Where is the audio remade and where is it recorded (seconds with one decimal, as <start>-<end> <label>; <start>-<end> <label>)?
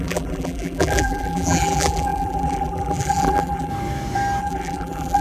0.0-3.7 remade; 3.7-4.4 recorded; 4.4-5.2 remade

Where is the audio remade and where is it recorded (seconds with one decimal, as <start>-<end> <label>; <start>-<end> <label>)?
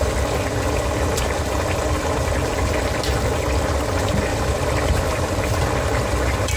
0.0-4.3 recorded; 4.3-4.9 remade; 4.9-6.6 recorded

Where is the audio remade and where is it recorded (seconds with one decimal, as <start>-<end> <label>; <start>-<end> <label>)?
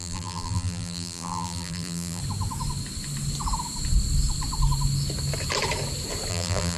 0.0-2.2 remade; 2.2-6.3 recorded; 6.3-6.8 remade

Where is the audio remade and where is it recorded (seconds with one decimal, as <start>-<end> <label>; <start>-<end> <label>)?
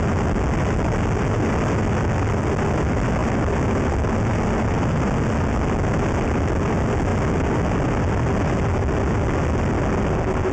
0.0-10.5 recorded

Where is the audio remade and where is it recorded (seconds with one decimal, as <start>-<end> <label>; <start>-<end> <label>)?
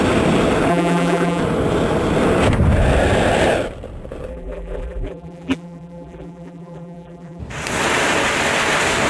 0.0-0.7 recorded; 0.7-1.4 remade; 1.4-4.3 recorded; 4.3-7.4 remade; 7.4-9.1 recorded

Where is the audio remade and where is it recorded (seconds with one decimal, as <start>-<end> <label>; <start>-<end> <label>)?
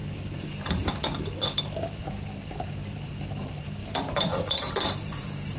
0.0-1.6 recorded; 1.6-5.6 remade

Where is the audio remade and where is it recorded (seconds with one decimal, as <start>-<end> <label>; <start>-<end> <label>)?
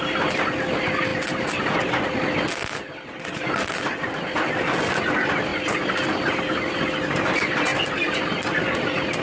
0.0-9.2 recorded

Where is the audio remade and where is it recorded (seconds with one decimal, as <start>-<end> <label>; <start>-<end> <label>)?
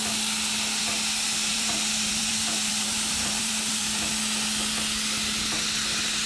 0.0-1.5 recorded; 1.5-4.1 remade; 4.1-6.3 recorded